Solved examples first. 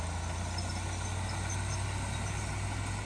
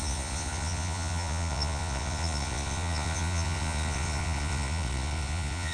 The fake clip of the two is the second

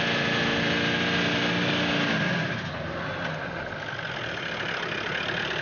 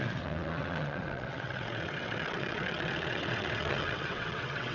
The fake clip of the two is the second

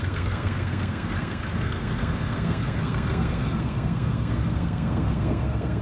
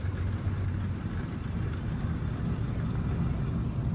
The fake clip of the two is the first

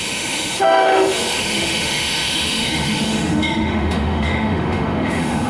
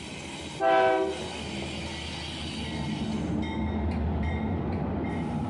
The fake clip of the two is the first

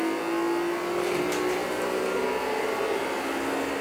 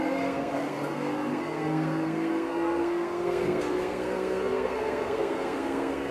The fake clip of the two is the second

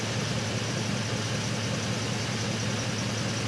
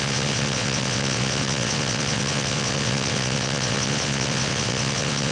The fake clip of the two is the second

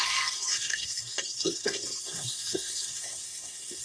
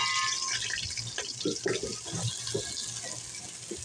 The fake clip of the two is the first